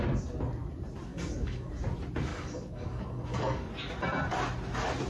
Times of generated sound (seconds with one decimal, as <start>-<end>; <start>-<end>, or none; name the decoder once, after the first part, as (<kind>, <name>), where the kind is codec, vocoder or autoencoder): 1.1-1.7 (codec, DAC); 2.3-3.7